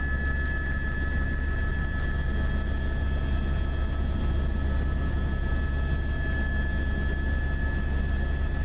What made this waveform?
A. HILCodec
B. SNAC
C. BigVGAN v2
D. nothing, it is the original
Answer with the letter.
D